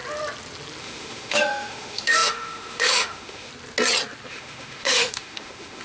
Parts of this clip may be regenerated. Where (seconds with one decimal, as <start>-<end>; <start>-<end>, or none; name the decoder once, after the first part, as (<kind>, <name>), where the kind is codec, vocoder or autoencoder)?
0.8-3.5 (autoencoder, DAC-VAE); 4.3-5.8